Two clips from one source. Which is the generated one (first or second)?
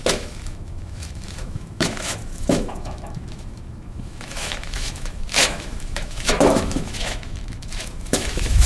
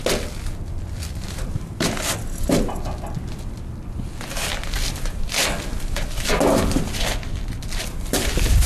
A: first